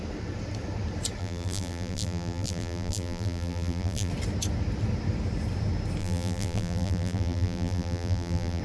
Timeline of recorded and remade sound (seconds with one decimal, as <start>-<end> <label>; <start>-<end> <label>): 0.0-1.2 recorded; 1.2-4.1 remade; 4.1-6.0 recorded; 6.0-8.6 remade